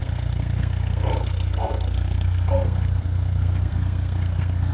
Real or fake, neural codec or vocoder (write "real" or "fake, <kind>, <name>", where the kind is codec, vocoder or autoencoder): fake, codec, SNAC